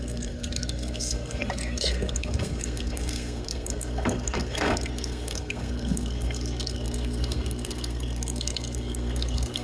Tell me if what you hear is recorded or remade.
remade